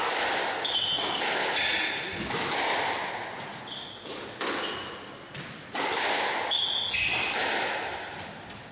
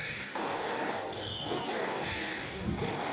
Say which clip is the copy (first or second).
second